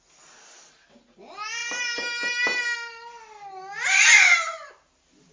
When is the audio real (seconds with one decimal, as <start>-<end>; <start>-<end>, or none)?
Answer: 0.0-5.3